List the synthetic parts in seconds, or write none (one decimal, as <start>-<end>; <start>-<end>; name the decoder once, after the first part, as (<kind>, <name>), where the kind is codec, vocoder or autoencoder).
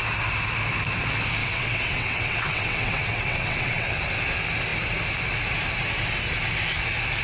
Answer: 1.4-4.2 (vocoder, WaveNeXt)